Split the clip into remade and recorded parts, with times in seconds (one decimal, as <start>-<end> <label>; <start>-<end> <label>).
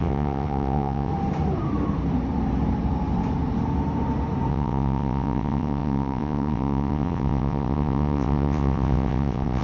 0.0-1.1 remade; 1.1-4.5 recorded; 4.5-9.6 remade